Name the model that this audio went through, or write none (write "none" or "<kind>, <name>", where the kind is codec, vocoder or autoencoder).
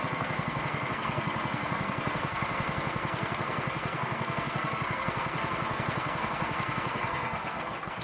codec, SNAC